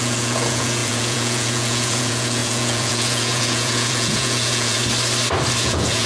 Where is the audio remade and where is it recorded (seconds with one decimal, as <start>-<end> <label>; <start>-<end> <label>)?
0.0-4.8 remade; 4.8-5.6 recorded; 5.6-6.1 remade